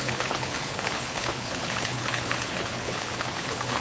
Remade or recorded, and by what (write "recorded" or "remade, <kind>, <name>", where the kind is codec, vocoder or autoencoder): remade, codec, HILCodec